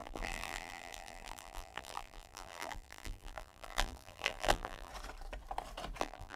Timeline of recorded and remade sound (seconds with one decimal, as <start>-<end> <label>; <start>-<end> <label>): 0.0-4.9 remade; 4.9-6.0 recorded; 6.0-6.4 remade